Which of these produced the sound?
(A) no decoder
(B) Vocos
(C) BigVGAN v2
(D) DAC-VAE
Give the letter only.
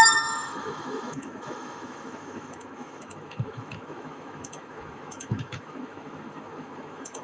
D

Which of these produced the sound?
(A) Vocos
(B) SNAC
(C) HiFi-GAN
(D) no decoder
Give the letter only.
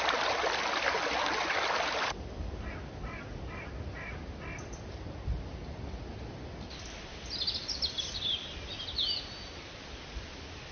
D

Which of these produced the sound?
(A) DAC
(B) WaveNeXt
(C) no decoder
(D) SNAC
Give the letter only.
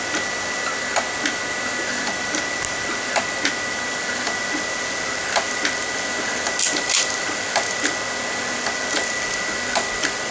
C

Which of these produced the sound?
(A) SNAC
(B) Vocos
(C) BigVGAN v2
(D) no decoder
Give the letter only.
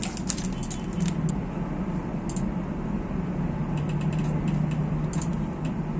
D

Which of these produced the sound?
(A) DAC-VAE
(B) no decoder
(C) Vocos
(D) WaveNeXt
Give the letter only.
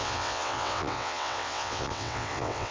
D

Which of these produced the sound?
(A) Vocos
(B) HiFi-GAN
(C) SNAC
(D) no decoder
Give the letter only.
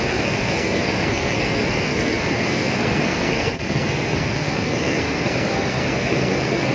C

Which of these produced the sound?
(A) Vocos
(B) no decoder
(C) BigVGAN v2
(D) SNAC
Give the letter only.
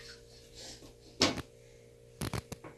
B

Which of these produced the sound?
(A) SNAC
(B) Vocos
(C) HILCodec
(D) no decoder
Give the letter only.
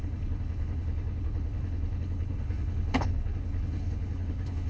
C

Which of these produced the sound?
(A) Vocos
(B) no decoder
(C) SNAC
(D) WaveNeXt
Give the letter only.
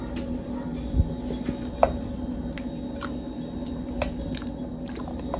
B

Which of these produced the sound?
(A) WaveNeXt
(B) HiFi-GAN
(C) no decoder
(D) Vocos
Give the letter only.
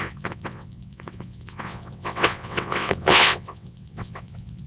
A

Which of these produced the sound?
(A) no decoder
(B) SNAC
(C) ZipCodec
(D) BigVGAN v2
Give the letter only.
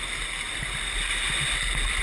A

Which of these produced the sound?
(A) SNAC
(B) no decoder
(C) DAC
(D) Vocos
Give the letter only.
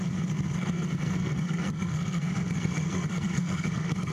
A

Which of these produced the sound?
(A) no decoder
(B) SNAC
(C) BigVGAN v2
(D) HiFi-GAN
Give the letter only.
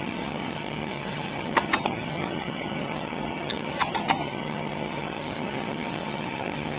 D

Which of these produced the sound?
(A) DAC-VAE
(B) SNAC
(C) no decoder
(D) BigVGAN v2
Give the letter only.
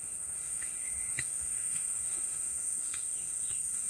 A